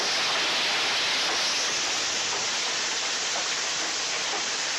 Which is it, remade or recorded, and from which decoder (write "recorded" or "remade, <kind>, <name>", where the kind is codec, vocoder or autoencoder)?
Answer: recorded